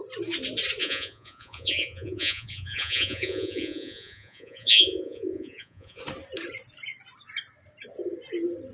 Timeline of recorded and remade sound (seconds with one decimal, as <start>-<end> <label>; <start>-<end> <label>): 0.0-0.8 recorded; 0.8-6.0 remade; 6.0-8.7 recorded